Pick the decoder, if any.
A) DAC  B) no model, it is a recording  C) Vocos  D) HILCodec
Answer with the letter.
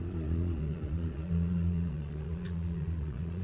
C